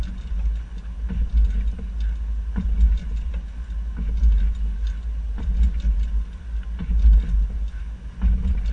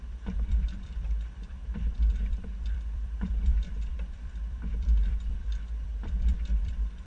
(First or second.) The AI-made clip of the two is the second